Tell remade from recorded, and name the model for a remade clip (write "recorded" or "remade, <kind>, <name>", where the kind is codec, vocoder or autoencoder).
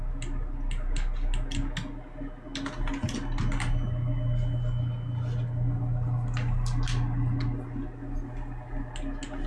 recorded